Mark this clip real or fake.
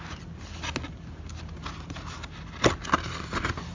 real